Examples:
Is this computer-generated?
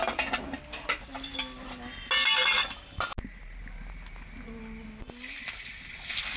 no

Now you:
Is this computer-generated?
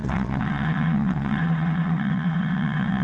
yes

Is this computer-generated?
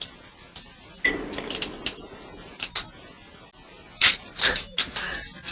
no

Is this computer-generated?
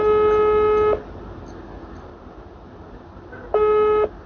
no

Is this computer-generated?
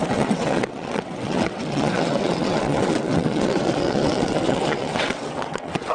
yes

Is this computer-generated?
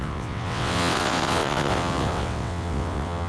yes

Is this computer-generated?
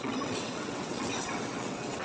yes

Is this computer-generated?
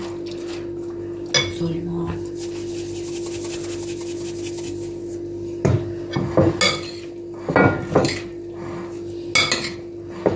no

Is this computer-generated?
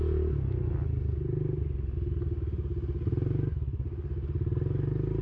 no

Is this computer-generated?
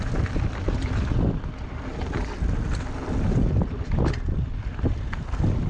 no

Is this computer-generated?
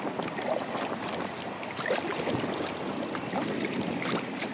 no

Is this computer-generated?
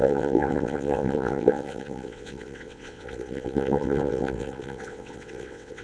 yes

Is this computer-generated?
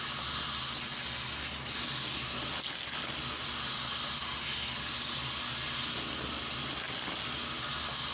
no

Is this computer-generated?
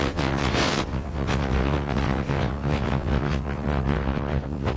yes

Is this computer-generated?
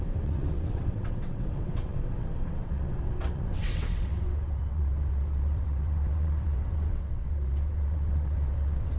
yes